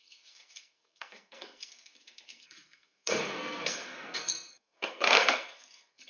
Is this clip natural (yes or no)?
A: no